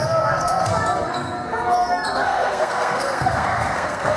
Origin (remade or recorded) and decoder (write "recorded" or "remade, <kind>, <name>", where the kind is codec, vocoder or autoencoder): remade, codec, SNAC